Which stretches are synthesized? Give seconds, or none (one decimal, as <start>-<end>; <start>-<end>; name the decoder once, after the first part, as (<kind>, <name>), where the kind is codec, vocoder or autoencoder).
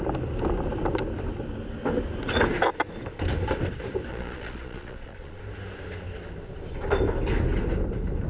4.1-5.4 (vocoder, Vocos)